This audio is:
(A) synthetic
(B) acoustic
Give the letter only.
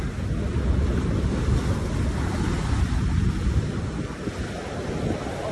B